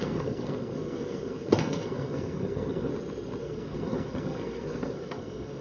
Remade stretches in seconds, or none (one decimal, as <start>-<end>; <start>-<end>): 0.0-2.9; 3.4-5.6